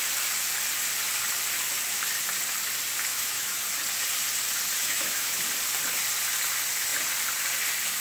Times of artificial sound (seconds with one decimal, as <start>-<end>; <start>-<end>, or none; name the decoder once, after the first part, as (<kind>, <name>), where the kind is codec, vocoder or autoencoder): 3.1-3.6 (autoencoder, DAC-VAE); 4.8-5.4